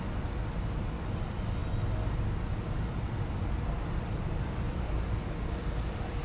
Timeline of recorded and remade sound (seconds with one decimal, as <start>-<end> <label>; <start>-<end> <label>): 0.0-6.2 recorded